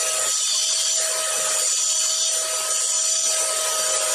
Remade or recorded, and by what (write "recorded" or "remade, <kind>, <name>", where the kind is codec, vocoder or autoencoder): recorded